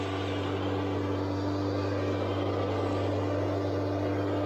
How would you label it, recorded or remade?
recorded